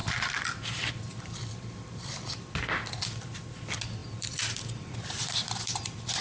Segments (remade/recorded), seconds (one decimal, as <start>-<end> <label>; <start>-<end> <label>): 0.0-4.0 recorded; 4.0-6.2 remade